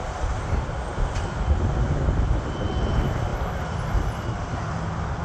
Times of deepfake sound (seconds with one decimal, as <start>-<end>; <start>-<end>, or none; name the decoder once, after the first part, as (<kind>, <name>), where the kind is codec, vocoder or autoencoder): none